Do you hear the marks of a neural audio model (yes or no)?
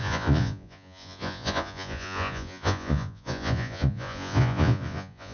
yes